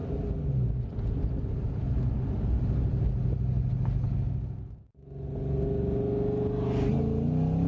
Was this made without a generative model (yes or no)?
yes